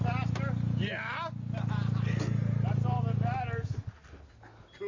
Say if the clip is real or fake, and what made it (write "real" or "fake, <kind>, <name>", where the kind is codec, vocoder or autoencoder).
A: real